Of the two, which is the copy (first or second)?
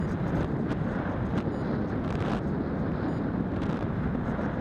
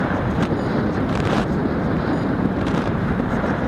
second